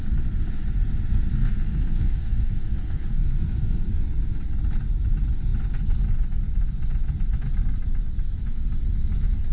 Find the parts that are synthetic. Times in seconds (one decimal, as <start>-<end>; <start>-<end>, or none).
1.3-4.0